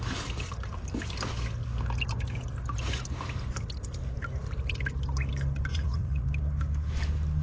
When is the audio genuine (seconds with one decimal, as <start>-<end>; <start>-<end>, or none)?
0.0-5.7; 6.3-7.4